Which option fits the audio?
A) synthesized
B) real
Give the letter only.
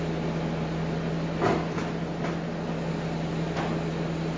B